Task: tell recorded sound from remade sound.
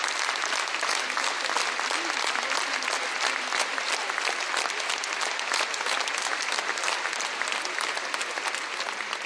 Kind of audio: recorded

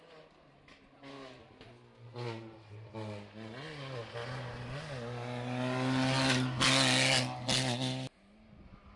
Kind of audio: recorded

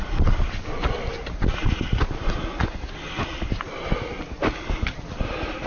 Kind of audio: recorded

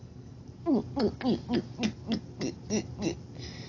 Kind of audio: recorded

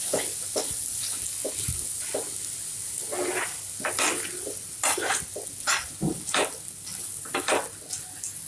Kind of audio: recorded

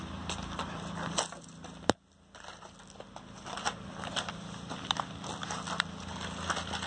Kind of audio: recorded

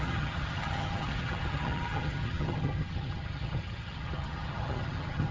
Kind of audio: remade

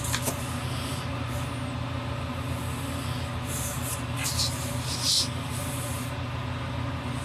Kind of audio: recorded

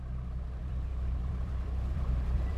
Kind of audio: remade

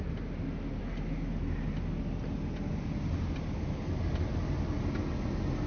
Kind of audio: recorded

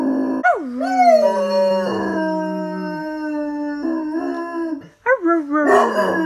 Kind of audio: recorded